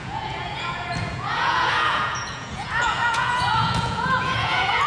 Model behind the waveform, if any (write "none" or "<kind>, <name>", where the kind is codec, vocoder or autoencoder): vocoder, Vocos